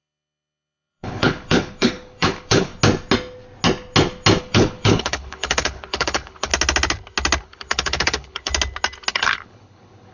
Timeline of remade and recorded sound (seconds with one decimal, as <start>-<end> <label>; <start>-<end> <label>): 0.0-2.7 remade; 2.7-4.4 recorded; 4.4-6.5 remade; 6.5-7.4 recorded; 7.4-8.5 remade; 8.5-9.1 recorded; 9.1-10.1 remade